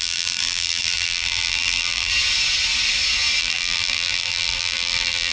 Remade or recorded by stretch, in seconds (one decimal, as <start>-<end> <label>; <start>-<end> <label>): 0.0-2.1 remade; 2.1-3.4 recorded; 3.4-5.3 remade